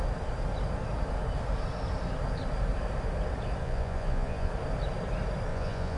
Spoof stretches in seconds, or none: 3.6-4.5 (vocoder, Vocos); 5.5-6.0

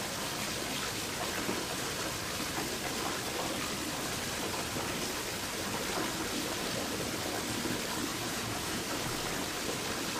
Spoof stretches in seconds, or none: 8.1-8.8 (vocoder, Vocos)

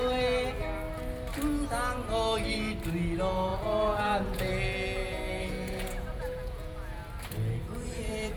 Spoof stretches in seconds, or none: 3.5-4.5 (vocoder, Vocos); 5.0-7.1

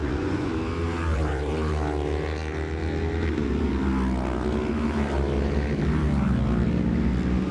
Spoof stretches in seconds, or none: 0.0-0.5 (vocoder, Vocos); 1.1-1.7

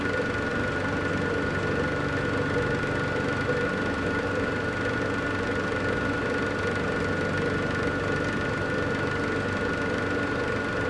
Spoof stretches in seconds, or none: none